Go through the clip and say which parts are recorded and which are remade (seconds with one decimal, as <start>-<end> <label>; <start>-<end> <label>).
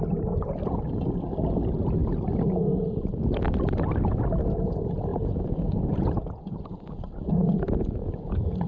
0.0-5.1 recorded; 5.1-6.9 remade; 6.9-7.4 recorded; 7.4-8.7 remade